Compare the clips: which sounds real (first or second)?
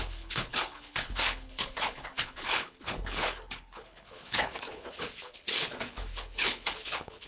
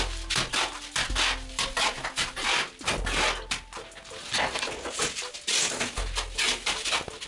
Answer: second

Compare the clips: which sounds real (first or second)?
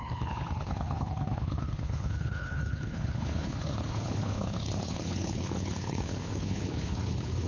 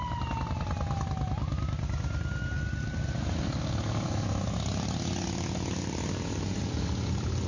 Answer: second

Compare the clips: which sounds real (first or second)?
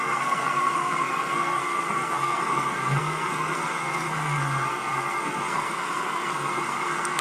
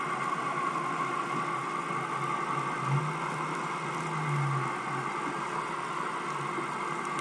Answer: second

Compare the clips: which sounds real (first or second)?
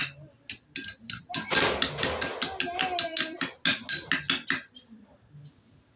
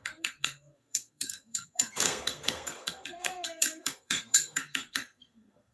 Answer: first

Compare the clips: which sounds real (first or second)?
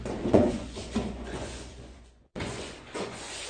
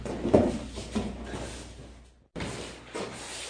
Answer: second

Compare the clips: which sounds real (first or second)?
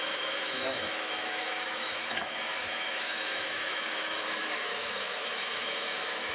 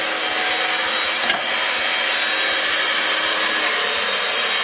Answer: second